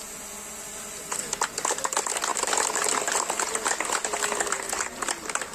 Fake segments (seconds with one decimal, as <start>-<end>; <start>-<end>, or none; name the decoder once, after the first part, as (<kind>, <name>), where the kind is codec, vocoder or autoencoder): 2.3-3.4 (vocoder, BigVGAN v2)

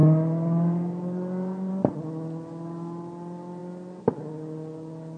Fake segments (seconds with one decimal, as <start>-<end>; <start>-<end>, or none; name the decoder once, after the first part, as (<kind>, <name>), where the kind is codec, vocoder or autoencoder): none

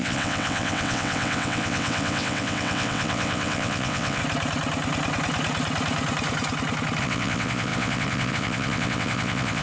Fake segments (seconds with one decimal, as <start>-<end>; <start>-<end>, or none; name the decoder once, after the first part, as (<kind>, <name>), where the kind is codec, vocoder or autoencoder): 0.0-4.2 (vocoder, WaveNeXt); 7.0-9.6